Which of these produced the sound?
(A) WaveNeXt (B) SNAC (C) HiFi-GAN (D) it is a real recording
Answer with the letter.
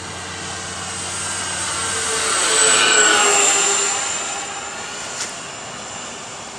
D